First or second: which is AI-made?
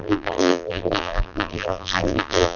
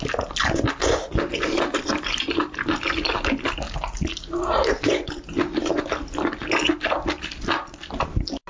first